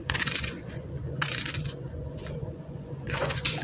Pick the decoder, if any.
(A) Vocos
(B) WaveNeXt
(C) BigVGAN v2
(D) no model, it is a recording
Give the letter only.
A